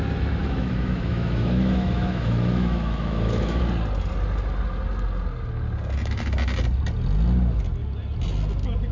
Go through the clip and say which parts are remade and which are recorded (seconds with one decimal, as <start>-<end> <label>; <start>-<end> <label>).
0.0-0.4 recorded; 0.4-3.6 remade; 3.6-8.9 recorded